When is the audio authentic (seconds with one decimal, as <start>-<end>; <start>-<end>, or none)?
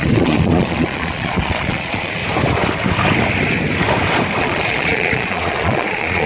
2.2-4.4